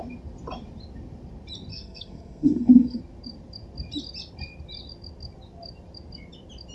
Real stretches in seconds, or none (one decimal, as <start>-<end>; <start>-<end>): 0.0-1.7; 3.0-6.7